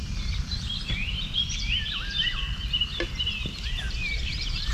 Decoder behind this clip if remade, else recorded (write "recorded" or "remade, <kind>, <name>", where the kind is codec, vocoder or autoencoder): remade, vocoder, BigVGAN v2